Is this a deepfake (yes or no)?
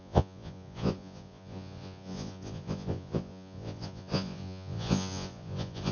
yes